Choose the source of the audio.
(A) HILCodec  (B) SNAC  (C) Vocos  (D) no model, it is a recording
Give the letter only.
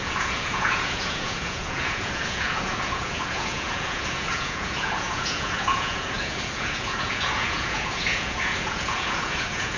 C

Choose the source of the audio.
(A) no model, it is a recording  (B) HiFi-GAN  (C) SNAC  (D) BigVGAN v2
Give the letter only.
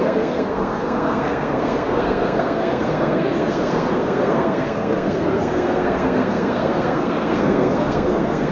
C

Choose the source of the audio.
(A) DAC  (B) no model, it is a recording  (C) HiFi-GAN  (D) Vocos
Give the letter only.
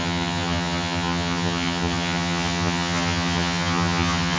C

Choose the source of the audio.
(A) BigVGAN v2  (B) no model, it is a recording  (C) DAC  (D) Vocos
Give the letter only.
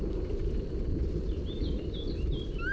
B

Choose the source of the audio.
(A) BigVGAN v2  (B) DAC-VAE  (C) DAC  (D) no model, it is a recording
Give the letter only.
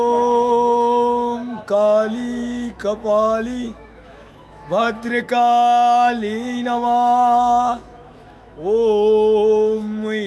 B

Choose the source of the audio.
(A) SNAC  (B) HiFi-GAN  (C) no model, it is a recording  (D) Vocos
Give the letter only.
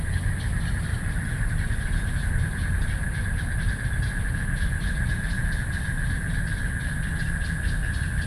C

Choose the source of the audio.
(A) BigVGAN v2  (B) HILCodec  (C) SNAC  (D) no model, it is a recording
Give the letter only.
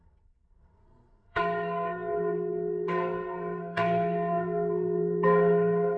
C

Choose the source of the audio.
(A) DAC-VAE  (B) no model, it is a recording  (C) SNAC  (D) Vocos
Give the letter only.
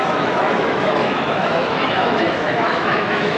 A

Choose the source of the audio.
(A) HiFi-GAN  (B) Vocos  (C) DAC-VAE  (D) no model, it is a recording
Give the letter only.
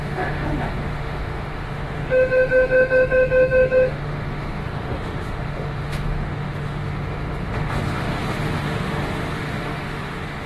C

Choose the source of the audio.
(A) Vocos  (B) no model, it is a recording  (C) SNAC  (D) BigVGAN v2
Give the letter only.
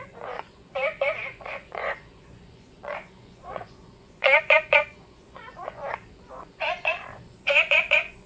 A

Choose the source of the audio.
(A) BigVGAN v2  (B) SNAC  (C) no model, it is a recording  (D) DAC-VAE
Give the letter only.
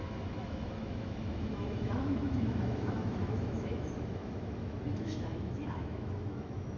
D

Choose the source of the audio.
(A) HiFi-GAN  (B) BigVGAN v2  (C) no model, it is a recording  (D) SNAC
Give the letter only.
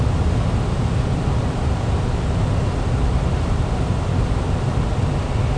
C